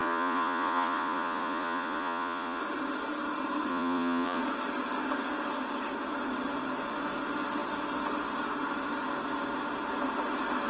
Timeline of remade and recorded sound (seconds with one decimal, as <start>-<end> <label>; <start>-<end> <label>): 0.0-2.6 remade; 2.6-3.7 recorded; 3.7-4.4 remade; 4.4-10.7 recorded